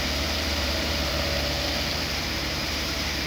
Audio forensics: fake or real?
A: fake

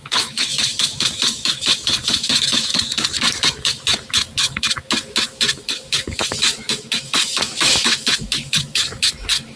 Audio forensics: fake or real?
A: fake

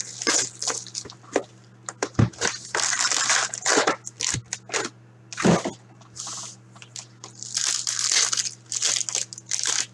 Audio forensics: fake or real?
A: real